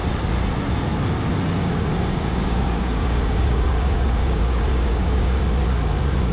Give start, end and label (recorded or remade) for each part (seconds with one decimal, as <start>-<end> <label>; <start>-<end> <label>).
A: 0.0-1.6 recorded; 1.6-5.4 remade; 5.4-6.3 recorded